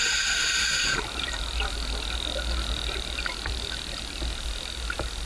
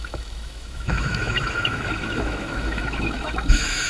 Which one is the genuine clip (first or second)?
first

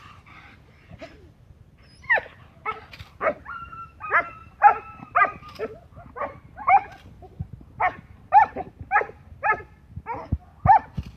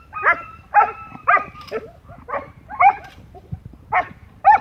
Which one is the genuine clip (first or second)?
first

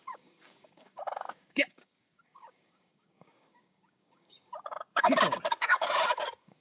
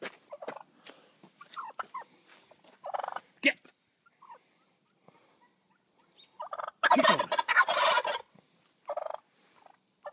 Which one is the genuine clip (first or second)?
second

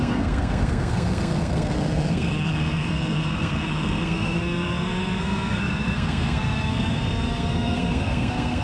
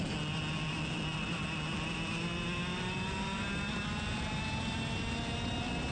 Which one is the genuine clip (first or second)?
second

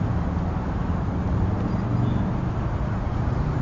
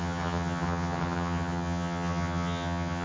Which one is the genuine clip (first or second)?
first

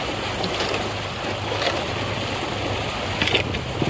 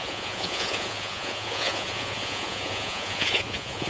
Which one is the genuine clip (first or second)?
first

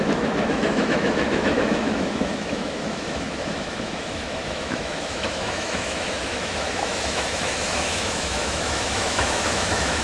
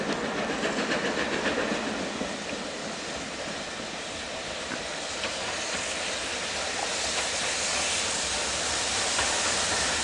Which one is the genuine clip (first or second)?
second